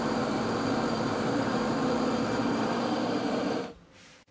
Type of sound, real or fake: fake